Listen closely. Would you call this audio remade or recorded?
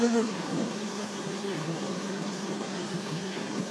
remade